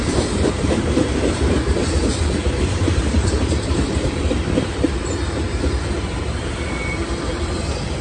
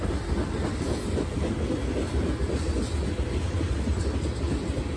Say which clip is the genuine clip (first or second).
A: second